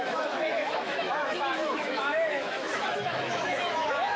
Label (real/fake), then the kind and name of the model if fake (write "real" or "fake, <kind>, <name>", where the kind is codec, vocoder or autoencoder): fake, autoencoder, DAC-VAE